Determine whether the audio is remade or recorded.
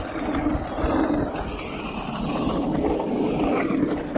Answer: recorded